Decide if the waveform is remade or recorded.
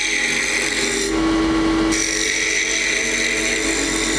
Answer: recorded